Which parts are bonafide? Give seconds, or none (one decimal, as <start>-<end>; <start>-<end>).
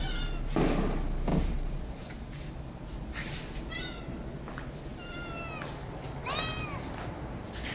0.0-1.3; 3.3-7.7